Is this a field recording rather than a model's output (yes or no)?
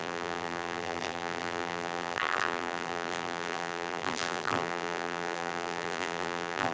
no